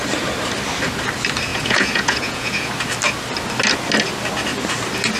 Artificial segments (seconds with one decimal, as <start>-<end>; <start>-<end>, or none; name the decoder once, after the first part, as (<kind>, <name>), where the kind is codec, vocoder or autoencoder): 1.5-2.7 (vocoder, Vocos)